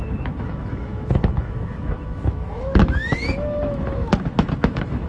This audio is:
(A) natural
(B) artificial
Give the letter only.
B